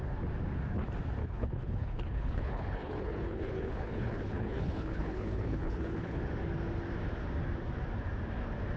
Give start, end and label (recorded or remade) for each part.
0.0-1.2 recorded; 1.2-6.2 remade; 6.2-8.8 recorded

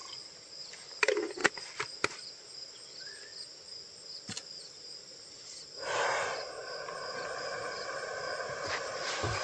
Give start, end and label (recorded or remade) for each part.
0.0-9.4 recorded

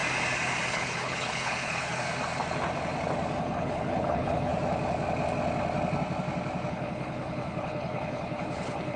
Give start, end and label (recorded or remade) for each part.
0.0-0.7 recorded; 0.7-2.0 remade; 2.0-3.4 recorded; 3.4-4.5 remade; 4.5-6.7 recorded; 6.7-9.0 remade